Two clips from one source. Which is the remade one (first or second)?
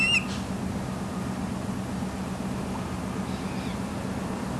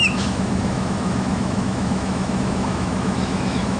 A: second